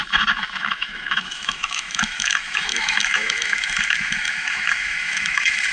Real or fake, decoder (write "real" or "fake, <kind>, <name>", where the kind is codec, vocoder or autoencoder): fake, autoencoder, DAC-VAE